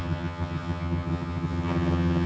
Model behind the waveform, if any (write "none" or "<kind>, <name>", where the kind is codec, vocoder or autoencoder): vocoder, HiFi-GAN